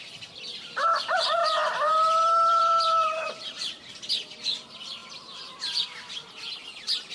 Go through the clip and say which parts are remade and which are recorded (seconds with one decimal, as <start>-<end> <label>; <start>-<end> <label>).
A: 0.0-1.4 recorded; 1.4-4.1 remade; 4.1-5.0 recorded; 5.0-7.1 remade